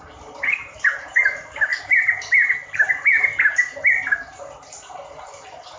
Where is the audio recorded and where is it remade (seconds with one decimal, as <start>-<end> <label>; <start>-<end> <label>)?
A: 0.0-1.7 remade; 1.7-5.2 recorded; 5.2-5.8 remade

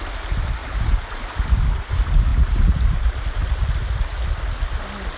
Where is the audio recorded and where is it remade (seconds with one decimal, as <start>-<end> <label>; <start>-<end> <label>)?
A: 0.0-0.6 recorded; 0.6-1.6 remade; 1.6-5.2 recorded

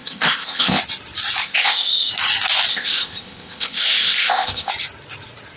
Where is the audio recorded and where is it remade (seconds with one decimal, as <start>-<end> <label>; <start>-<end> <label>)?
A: 0.0-0.8 remade; 0.8-1.4 recorded; 1.4-2.1 remade; 2.1-2.7 recorded; 2.7-4.7 remade; 4.7-5.6 recorded

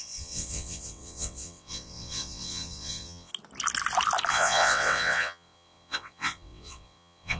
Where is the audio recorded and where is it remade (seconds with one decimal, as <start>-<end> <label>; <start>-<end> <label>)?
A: 0.0-3.3 remade; 3.3-4.3 recorded; 4.3-7.4 remade

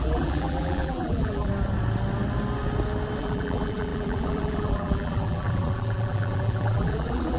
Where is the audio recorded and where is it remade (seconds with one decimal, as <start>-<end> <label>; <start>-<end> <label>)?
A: 0.0-1.5 remade; 1.5-3.2 recorded; 3.2-7.4 remade